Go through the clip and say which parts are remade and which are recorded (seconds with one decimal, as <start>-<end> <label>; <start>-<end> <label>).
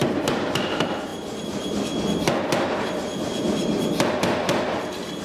0.0-0.6 remade; 0.6-5.2 recorded